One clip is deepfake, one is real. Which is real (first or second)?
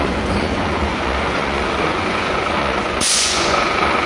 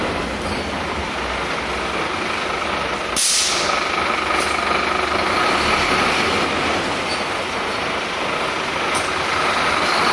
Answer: second